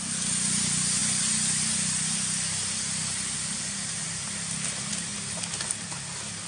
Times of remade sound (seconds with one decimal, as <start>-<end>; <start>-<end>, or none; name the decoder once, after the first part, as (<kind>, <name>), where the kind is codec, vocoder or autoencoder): none